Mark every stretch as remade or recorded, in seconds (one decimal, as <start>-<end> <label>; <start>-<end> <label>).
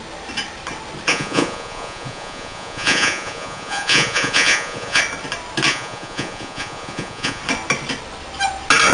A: 0.0-1.1 recorded; 1.1-5.0 remade; 5.0-5.7 recorded; 5.7-7.4 remade; 7.4-8.9 recorded